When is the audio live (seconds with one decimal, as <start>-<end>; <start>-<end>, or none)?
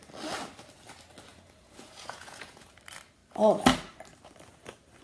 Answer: 0.0-1.3; 2.7-5.0